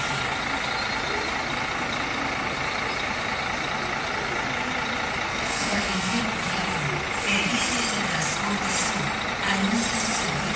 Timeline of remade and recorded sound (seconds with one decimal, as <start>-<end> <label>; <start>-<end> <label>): 0.0-5.3 recorded; 5.3-6.2 remade; 6.2-10.6 recorded